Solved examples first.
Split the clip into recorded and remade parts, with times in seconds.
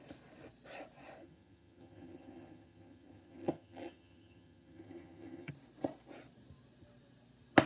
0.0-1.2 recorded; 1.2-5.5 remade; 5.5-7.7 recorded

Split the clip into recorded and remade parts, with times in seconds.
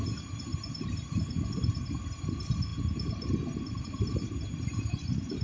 0.0-5.4 recorded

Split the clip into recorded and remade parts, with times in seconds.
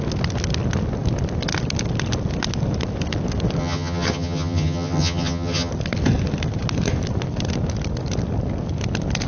0.0-3.6 recorded; 3.6-5.7 remade; 5.7-9.3 recorded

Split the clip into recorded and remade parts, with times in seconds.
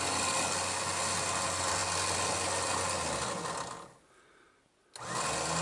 0.0-5.6 recorded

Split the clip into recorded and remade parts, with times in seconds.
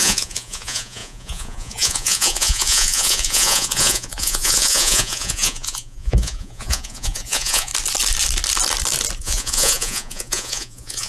0.0-7.7 remade; 7.7-9.2 recorded; 9.2-11.1 remade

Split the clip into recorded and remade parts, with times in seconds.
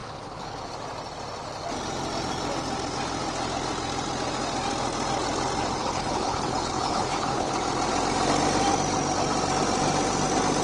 0.0-0.7 remade; 0.7-5.8 recorded; 5.8-7.5 remade; 7.5-10.6 recorded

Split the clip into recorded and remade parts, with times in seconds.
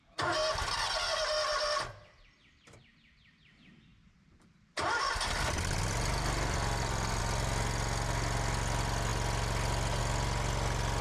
0.0-3.9 recorded; 3.9-7.2 remade; 7.2-11.0 recorded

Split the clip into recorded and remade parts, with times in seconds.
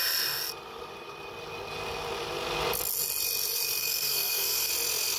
0.0-3.8 recorded; 3.8-4.7 remade; 4.7-5.2 recorded